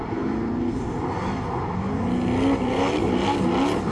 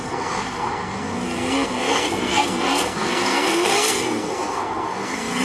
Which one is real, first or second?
first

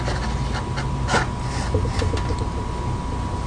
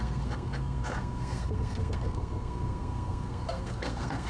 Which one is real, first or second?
first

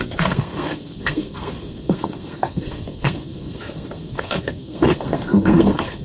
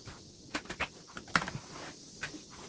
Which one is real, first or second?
second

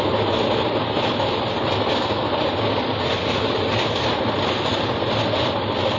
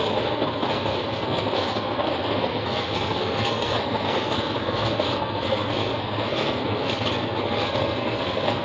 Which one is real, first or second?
first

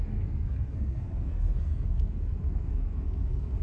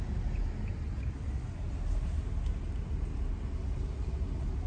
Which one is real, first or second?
second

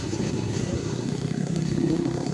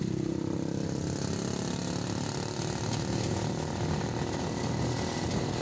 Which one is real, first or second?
second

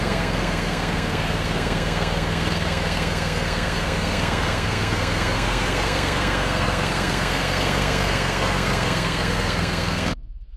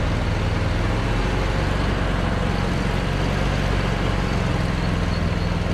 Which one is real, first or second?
second